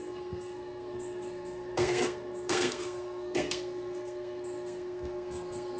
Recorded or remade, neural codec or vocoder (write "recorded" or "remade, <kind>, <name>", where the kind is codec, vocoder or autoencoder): remade, codec, SNAC